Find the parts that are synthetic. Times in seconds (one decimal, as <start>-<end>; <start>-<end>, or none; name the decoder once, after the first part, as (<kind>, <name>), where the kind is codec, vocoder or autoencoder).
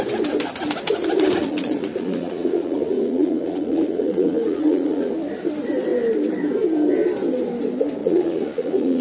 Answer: 1.4-5.1 (vocoder, Vocos); 8.0-9.0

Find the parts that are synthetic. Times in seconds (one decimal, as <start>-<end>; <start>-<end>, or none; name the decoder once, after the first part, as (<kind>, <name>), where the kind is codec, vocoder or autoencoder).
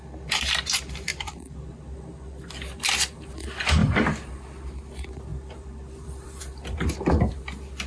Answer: 1.1-1.7 (vocoder, BigVGAN v2); 3.8-4.3; 5.3-6.4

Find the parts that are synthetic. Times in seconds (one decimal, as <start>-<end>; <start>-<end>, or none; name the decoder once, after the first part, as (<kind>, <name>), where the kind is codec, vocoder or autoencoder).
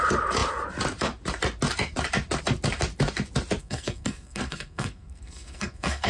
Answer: 3.6-6.1 (codec, SNAC)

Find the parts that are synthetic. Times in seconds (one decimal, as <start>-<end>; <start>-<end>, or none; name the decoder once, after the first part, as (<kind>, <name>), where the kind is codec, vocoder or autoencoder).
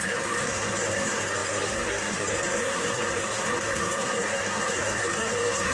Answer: 0.0-5.7 (codec, SNAC)